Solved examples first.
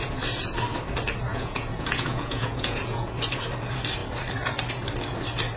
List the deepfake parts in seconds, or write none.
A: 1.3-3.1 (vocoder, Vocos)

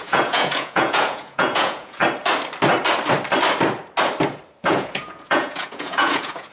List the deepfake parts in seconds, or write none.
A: 0.0-2.0 (vocoder, Vocos); 4.6-6.5

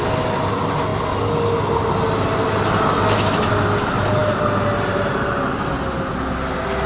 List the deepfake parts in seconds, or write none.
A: none